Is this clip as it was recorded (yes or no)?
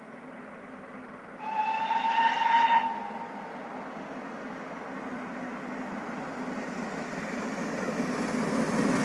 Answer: yes